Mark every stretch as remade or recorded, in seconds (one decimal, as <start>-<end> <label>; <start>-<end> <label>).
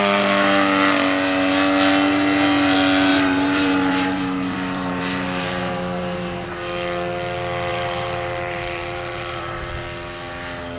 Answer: 0.0-3.1 recorded; 3.1-6.5 remade; 6.5-7.7 recorded; 7.7-9.7 remade; 9.7-10.8 recorded